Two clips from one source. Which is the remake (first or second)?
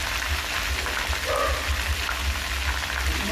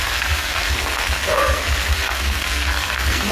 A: second